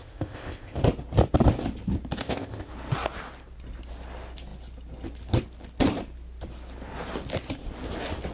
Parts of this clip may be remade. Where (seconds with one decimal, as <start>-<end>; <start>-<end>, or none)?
0.0-0.8; 2.2-2.7